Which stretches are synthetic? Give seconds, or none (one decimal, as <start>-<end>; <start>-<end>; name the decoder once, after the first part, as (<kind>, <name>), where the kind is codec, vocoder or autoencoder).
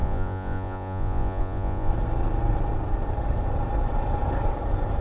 0.0-1.9 (vocoder, Vocos)